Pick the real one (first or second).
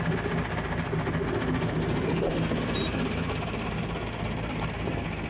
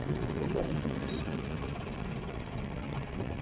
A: first